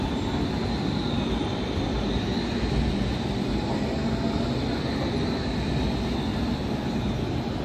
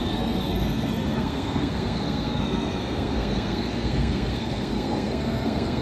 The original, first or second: first